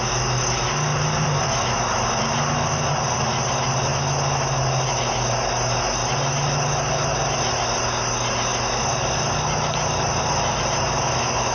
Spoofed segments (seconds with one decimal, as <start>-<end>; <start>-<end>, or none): none